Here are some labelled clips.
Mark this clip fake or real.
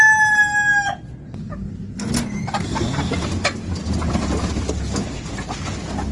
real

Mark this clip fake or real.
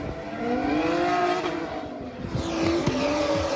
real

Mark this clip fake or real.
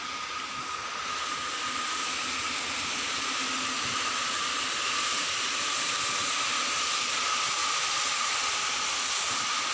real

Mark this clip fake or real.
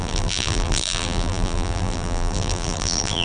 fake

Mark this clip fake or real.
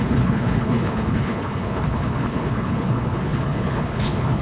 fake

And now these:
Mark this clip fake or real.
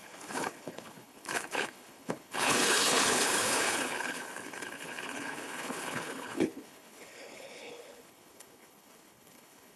fake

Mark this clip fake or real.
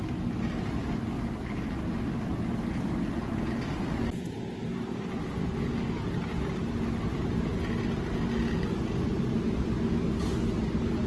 real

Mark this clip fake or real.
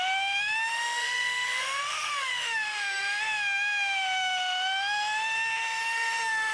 fake